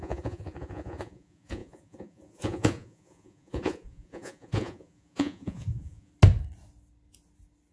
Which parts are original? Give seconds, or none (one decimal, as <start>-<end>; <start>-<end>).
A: 6.1-7.7